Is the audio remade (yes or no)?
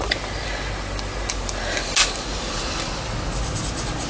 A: no